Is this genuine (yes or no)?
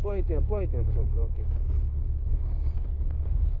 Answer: no